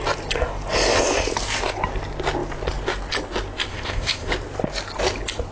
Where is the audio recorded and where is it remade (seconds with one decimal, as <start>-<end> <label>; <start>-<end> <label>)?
0.0-3.7 recorded; 3.7-4.3 remade; 4.3-5.5 recorded